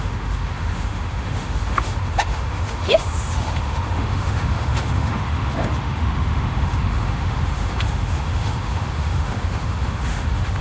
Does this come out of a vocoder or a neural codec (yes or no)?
yes